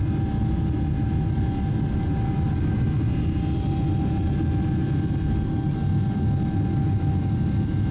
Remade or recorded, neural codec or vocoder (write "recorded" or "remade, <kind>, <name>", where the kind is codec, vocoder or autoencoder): recorded